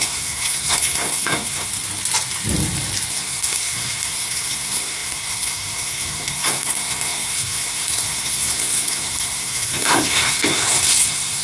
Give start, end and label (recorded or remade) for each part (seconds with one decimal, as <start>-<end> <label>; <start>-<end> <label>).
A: 0.0-1.7 remade; 1.7-3.1 recorded; 3.1-11.4 remade